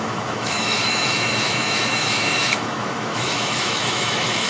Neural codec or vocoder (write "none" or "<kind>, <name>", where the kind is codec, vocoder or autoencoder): autoencoder, DAC-VAE